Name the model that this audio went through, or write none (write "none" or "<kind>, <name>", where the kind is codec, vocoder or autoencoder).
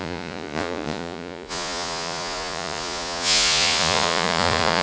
vocoder, Vocos